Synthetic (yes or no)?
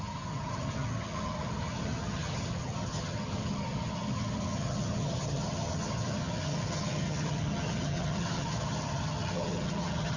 yes